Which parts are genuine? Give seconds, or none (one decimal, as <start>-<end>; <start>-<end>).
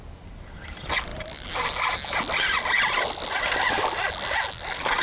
0.0-5.0